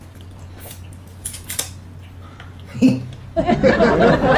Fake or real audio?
real